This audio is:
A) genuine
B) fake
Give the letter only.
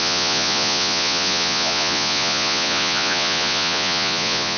B